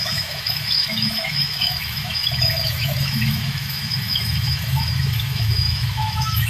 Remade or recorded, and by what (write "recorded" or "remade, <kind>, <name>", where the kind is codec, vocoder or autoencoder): remade, autoencoder, DAC-VAE